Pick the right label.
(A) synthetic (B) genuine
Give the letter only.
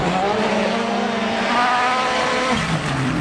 B